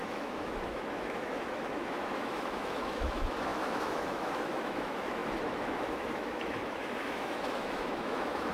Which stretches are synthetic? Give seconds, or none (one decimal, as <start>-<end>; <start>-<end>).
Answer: 0.0-8.5